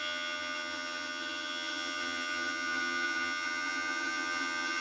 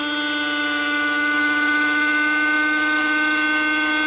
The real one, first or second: second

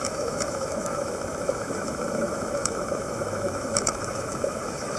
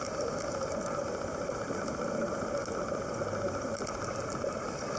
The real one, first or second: second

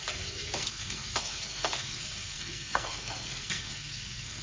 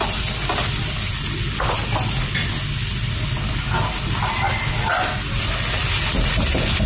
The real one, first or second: second